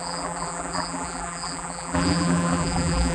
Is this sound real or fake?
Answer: fake